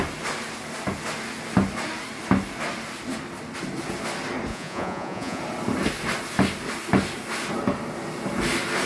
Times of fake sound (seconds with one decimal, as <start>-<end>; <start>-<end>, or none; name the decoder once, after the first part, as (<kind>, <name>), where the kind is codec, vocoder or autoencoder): 4.5-5.4 (vocoder, Vocos)